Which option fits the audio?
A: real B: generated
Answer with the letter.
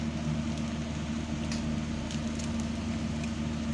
A